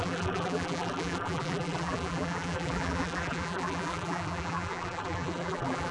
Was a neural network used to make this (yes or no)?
yes